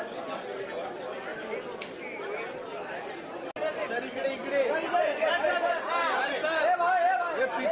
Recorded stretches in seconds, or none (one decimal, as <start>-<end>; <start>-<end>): 0.0-7.7